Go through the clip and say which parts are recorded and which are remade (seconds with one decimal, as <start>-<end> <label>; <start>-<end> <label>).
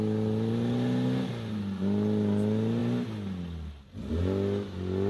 0.0-5.1 recorded